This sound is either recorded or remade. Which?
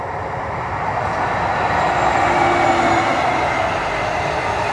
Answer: recorded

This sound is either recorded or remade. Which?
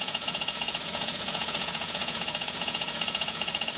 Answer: remade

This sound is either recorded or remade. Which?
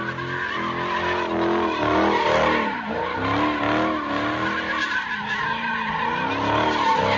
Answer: recorded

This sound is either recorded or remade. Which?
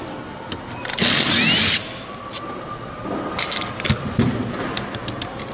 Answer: recorded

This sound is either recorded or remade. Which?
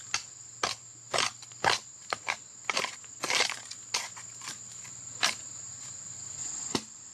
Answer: recorded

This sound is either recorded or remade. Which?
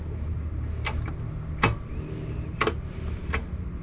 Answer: recorded